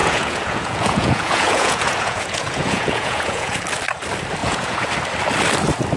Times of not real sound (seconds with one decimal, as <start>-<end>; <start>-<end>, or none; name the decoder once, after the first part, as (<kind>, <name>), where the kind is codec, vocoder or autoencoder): 0.0-3.6 (vocoder, Vocos); 4.4-4.9